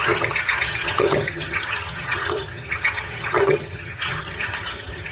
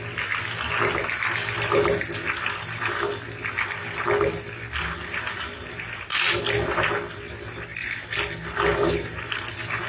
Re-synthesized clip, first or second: first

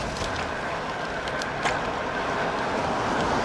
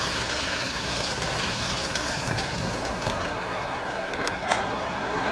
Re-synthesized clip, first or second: second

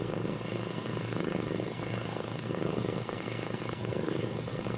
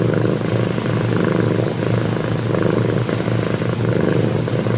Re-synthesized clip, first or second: first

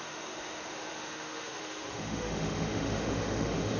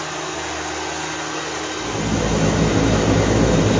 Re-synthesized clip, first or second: first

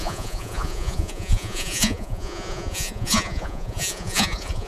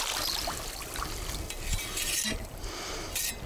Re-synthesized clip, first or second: first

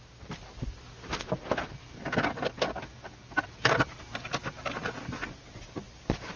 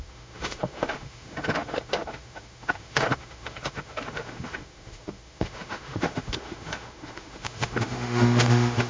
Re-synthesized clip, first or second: second